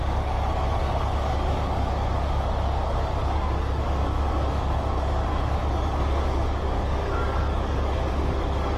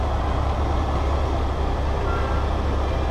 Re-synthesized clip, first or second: first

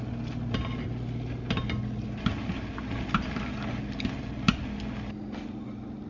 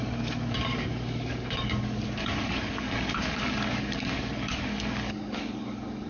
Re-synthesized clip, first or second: second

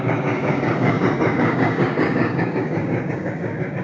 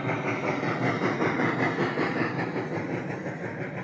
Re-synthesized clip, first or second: first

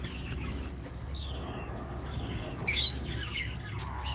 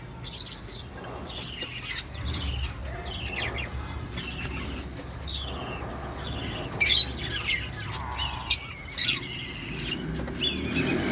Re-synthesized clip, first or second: first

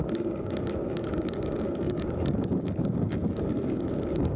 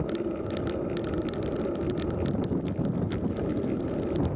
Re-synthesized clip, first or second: first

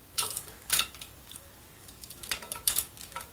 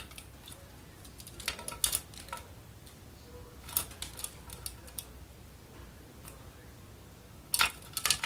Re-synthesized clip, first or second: first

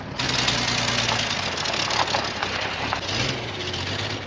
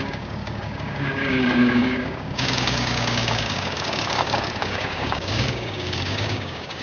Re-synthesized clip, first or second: second